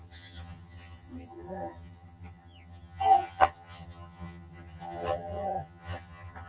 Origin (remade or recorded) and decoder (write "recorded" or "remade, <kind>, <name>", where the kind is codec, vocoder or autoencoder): remade, vocoder, HiFi-GAN